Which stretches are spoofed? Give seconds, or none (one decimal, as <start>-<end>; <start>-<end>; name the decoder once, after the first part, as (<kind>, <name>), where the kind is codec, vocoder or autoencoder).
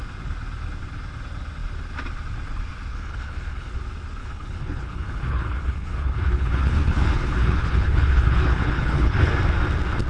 2.9-3.7 (codec, HILCodec); 4.2-9.3